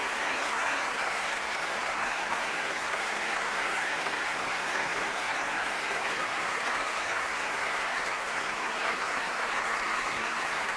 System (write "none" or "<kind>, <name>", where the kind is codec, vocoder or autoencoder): codec, SNAC